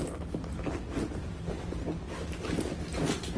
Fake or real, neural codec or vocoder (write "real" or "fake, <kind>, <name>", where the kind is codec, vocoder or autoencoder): real